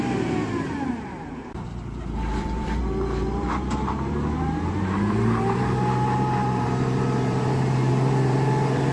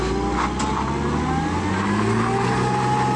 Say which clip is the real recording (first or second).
second